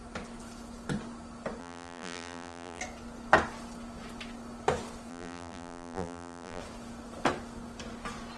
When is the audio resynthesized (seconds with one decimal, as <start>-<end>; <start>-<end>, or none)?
1.6-2.8; 5.1-6.6